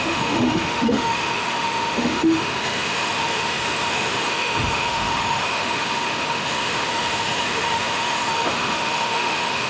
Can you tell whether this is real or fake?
fake